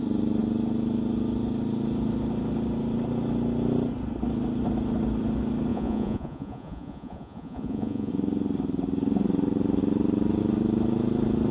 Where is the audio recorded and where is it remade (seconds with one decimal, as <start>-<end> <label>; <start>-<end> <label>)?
0.0-5.7 recorded; 5.7-8.1 remade; 8.1-11.5 recorded